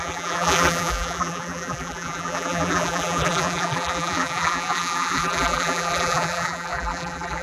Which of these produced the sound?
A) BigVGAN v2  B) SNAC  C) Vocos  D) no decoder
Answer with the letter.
A